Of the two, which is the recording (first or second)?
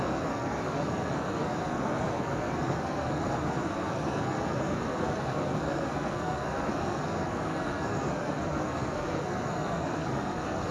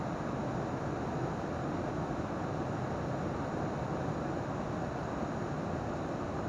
second